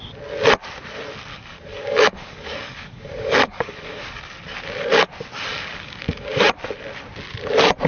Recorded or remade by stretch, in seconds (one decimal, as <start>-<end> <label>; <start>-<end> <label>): 0.0-1.3 recorded; 1.3-4.2 remade; 4.2-5.5 recorded; 5.5-6.5 remade; 6.5-7.9 recorded